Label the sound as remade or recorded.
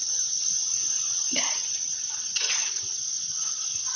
remade